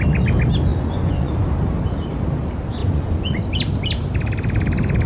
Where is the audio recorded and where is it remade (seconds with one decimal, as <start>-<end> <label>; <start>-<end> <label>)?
0.0-0.7 recorded; 0.7-1.3 remade; 1.3-2.8 recorded; 2.8-3.4 remade; 3.4-5.1 recorded